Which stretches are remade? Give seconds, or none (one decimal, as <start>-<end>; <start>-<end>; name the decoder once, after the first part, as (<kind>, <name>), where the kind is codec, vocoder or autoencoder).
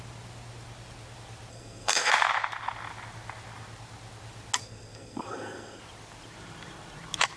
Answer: 1.5-2.1 (codec, SNAC); 4.6-5.8